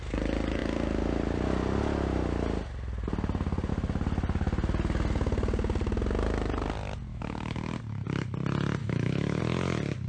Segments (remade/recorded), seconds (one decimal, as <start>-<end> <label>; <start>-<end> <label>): 0.0-7.1 recorded; 7.1-7.6 remade; 7.6-8.8 recorded; 8.8-9.4 remade; 9.4-10.1 recorded